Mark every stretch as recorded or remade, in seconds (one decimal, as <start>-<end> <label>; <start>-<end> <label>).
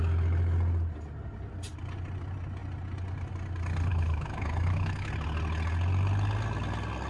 0.0-3.9 recorded; 3.9-5.1 remade; 5.1-7.1 recorded